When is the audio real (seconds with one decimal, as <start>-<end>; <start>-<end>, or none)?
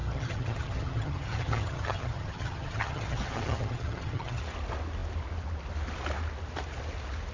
4.4-7.3